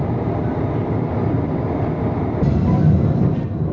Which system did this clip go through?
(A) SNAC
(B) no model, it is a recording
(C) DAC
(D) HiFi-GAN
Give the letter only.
B